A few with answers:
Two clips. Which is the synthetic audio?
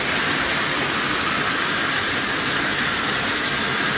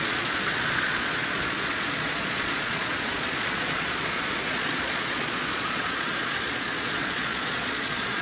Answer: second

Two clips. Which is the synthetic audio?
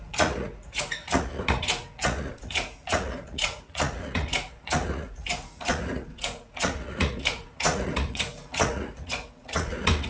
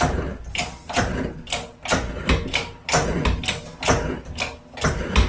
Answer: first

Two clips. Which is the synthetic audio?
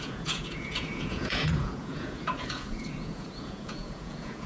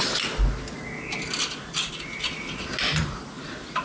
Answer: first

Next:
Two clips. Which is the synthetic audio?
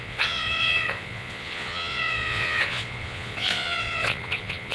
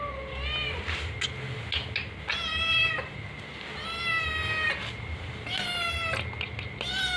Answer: first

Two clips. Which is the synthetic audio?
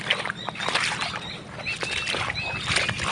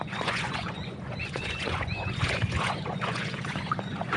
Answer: second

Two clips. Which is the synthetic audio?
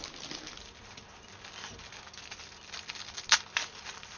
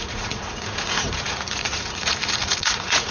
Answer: second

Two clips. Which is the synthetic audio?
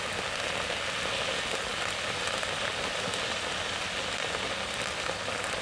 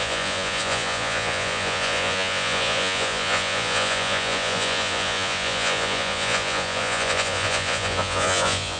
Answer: second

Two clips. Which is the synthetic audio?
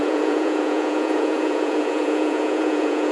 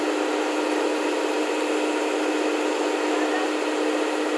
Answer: first